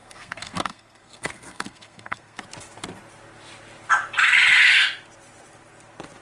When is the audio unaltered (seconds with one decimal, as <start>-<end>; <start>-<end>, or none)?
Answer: 2.4-6.2